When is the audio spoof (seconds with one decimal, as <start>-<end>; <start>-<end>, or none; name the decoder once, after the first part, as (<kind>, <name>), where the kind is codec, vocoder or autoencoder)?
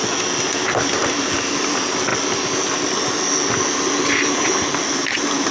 none